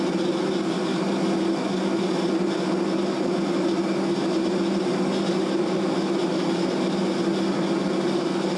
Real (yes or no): yes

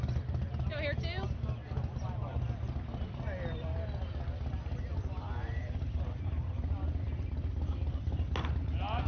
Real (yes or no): yes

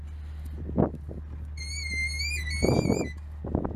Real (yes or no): yes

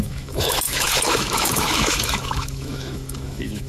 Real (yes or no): no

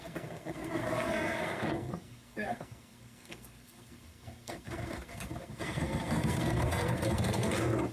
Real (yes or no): no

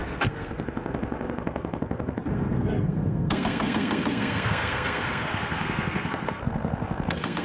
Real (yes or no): no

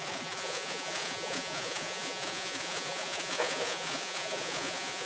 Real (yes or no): no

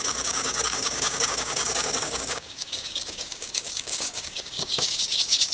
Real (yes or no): no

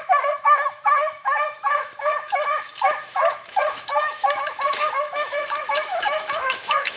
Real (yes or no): no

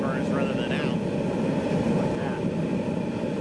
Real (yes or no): yes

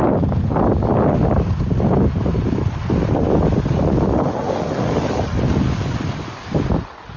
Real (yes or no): yes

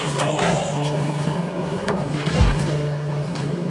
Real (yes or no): no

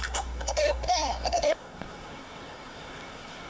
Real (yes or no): no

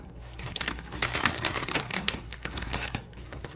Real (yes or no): no